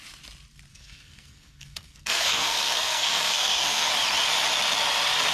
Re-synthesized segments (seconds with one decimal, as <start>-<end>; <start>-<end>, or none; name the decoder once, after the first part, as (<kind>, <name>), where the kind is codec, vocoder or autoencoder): 0.7-3.9 (codec, SNAC)